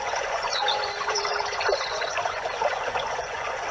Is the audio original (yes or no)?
no